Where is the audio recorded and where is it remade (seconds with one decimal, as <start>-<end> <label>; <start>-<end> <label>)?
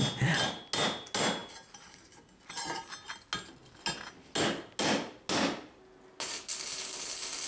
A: 0.0-7.5 recorded